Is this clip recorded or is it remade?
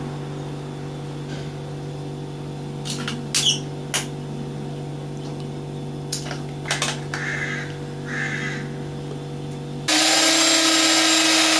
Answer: recorded